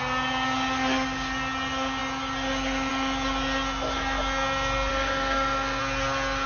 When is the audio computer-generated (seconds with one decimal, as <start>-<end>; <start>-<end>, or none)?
4.9-5.8